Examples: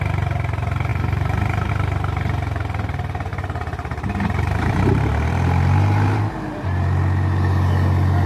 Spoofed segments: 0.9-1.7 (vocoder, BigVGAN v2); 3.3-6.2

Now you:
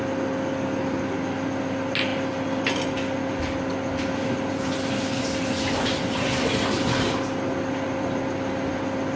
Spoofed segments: none

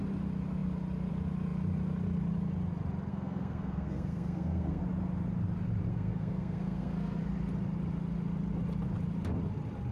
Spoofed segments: 3.1-4.8 (codec, SNAC); 5.9-7.2

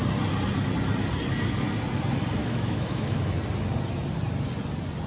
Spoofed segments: 2.4-3.3 (autoencoder, DAC-VAE)

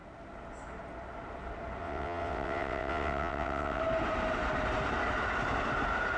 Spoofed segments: 1.8-3.8 (vocoder, WaveNeXt)

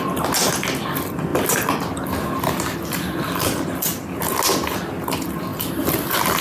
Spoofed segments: none

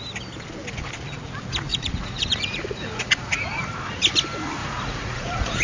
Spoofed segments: 1.7-3.6 (vocoder, Vocos); 4.6-5.6

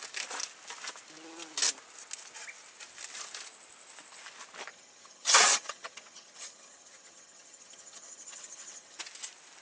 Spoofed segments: 4.7-9.0 (vocoder, HiFi-GAN)